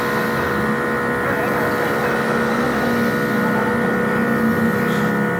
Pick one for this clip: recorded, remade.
recorded